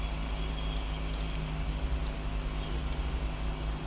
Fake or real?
real